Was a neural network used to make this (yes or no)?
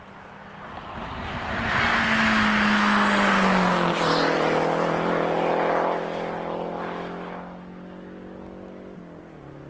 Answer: no